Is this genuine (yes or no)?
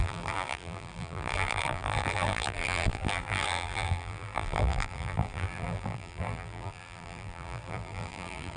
no